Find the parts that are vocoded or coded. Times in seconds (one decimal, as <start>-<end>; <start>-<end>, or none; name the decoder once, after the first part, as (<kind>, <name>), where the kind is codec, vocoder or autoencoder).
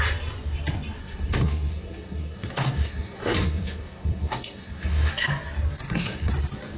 1.0-5.1 (codec, SNAC); 5.8-6.3